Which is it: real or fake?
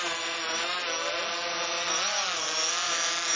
real